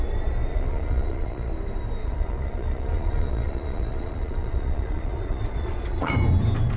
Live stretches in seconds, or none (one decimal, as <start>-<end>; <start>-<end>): 0.0-0.5; 1.5-2.0; 6.1-6.8